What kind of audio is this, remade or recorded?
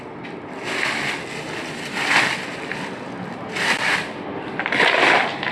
recorded